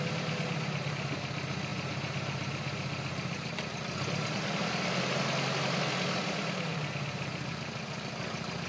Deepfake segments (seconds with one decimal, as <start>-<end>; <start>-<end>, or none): 6.7-7.5